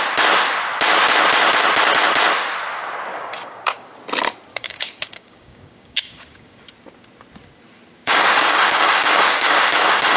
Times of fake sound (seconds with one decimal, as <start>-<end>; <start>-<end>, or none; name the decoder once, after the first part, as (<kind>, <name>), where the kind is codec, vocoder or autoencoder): 3.1-3.9 (codec, DAC); 4.5-6.6; 8.0-10.2

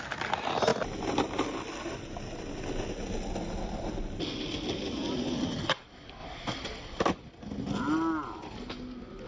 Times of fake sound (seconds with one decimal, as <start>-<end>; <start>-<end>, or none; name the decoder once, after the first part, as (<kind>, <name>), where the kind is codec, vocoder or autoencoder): none

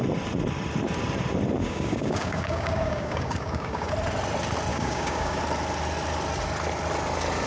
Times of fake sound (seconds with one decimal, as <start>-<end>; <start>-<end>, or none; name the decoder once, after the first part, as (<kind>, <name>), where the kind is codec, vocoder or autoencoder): 1.6-3.9 (codec, DAC); 4.7-5.4

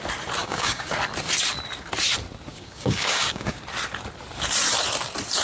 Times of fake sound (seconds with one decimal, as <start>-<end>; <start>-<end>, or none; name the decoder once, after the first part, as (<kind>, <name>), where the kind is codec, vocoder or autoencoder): 0.4-0.9 (codec, DAC); 2.5-3.6

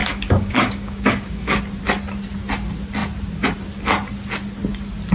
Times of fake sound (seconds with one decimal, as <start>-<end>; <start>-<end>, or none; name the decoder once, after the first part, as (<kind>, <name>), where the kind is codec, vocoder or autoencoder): 0.0-1.6 (codec, DAC)

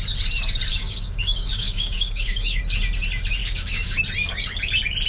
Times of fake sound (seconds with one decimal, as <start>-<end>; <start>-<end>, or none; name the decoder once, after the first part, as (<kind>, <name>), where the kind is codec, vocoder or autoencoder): 0.7-2.6 (codec, DAC); 3.4-4.0

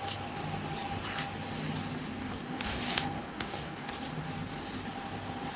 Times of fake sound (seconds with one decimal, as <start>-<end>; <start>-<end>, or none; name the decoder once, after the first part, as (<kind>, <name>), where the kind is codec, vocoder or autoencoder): 2.2-2.8 (codec, DAC); 3.2-3.9

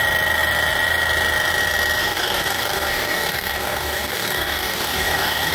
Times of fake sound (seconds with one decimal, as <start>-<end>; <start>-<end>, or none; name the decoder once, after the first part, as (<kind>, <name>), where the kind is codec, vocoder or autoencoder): 2.0-5.5 (codec, DAC)